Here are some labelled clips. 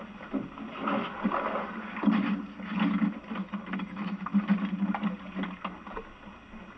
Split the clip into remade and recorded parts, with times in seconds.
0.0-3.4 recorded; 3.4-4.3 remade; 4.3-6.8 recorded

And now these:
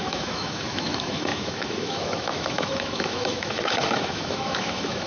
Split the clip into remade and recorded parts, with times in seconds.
0.0-5.1 remade

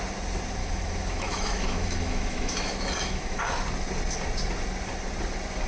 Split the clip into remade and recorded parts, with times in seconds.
0.0-0.6 recorded; 0.6-3.4 remade; 3.4-5.7 recorded

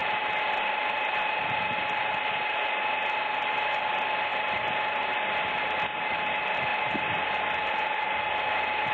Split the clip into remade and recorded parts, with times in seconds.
0.0-8.9 recorded

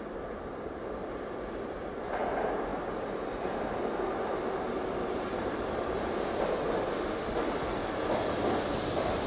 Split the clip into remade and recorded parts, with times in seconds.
0.0-9.3 recorded

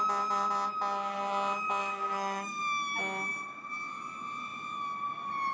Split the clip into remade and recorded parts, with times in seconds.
0.0-1.8 recorded; 1.8-2.6 remade; 2.6-5.5 recorded

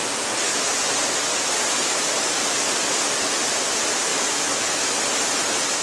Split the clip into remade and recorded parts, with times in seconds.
0.0-4.1 recorded; 4.1-4.9 remade; 4.9-5.8 recorded